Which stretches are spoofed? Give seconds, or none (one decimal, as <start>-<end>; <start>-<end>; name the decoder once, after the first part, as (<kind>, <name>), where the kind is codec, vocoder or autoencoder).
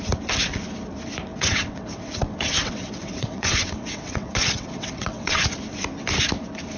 1.3-5.4 (vocoder, WaveNeXt)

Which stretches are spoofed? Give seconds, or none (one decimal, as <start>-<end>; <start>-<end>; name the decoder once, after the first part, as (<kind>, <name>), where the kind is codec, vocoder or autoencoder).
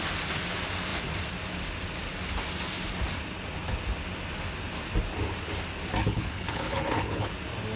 6.0-7.3 (codec, HILCodec)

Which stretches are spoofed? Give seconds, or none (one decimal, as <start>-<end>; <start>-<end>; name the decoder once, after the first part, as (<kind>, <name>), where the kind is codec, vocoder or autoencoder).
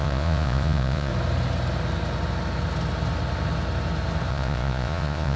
0.0-1.1 (vocoder, Vocos); 4.3-5.4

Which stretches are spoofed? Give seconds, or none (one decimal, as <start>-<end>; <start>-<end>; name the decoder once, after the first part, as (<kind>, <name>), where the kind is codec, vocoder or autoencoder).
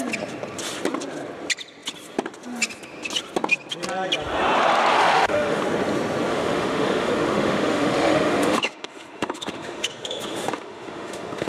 4.9-5.6 (autoencoder, DAC-VAE); 6.3-11.5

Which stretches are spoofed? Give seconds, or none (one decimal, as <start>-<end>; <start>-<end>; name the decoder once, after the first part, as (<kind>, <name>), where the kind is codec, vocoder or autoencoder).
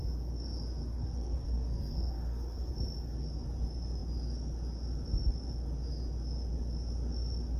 0.8-2.7 (codec, SNAC)